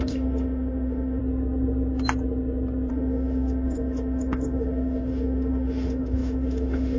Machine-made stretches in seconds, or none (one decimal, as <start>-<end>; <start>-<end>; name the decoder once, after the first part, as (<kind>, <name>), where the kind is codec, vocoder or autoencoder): 0.0-1.2 (autoencoder, DAC-VAE); 2.9-7.0